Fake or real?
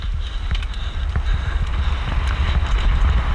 real